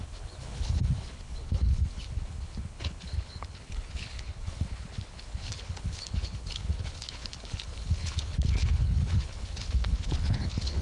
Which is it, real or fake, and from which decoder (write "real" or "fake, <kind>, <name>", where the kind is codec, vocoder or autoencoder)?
fake, codec, HILCodec